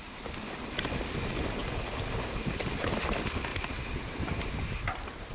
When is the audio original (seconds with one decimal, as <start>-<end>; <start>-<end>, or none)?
0.0-3.5